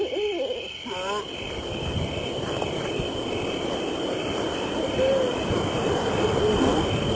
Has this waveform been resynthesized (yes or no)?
no